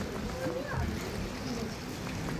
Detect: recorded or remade recorded